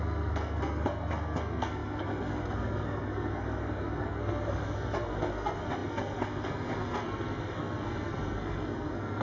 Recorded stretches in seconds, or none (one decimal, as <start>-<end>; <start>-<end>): none